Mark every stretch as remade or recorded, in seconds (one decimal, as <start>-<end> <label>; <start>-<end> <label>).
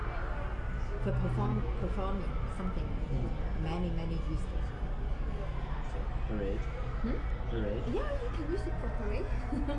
0.0-9.8 recorded